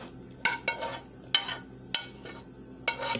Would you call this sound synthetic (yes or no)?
no